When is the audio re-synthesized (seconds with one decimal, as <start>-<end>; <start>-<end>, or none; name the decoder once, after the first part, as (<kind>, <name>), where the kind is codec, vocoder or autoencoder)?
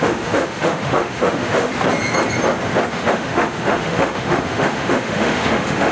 0.0-1.7 (autoencoder, DAC-VAE); 2.9-5.9